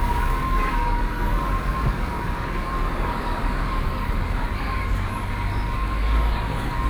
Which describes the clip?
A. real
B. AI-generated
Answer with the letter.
B